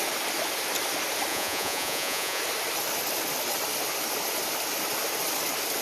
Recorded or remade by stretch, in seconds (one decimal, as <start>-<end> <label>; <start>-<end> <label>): 0.0-1.3 recorded; 1.3-2.4 remade; 2.4-5.8 recorded